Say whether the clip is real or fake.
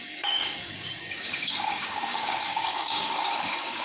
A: fake